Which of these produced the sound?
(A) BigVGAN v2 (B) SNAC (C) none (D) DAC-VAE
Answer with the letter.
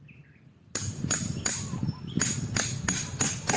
C